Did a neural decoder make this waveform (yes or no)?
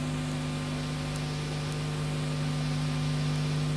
no